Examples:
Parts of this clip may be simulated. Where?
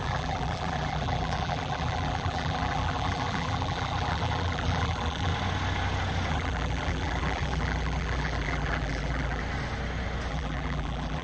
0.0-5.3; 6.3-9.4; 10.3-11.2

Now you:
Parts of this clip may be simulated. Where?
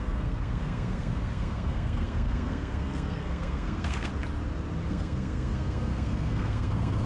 0.0-4.1; 4.9-7.1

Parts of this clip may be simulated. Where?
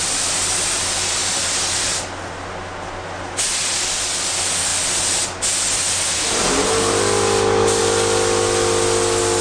none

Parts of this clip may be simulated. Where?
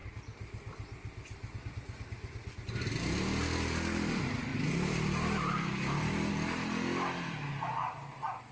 4.5-6.3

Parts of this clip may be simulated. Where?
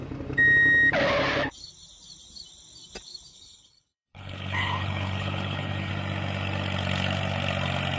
3.3-5.9